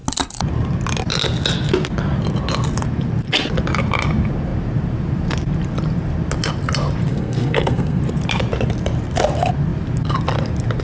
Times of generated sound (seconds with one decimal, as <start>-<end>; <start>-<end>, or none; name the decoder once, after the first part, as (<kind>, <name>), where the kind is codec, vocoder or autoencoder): 7.1-8.0 (codec, SNAC)